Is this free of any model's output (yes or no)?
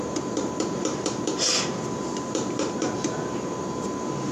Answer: no